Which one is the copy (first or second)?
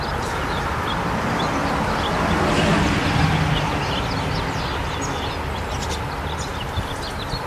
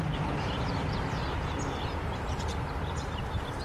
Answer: second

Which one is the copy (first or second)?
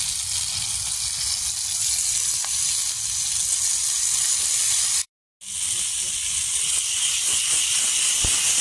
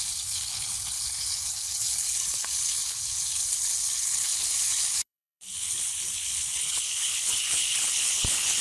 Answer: second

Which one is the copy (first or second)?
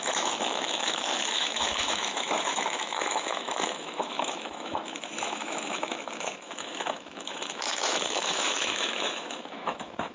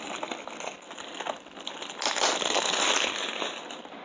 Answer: first